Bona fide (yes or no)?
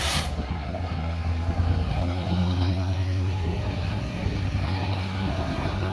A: no